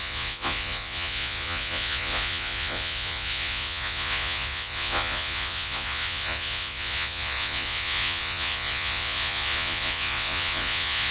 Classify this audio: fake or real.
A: fake